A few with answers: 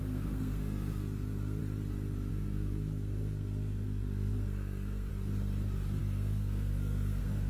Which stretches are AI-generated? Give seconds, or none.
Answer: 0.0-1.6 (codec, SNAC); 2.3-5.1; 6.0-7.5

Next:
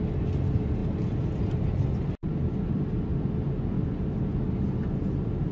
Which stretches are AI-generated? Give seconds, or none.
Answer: none

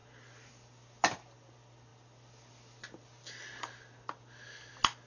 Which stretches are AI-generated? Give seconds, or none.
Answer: none

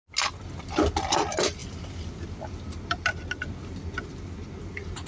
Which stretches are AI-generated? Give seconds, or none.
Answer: none

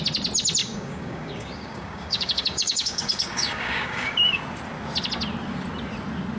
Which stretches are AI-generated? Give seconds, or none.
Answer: 0.6-4.4 (codec, DAC)